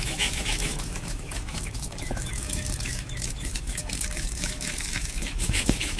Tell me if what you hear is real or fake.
fake